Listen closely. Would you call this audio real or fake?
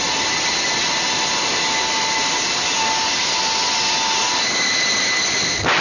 real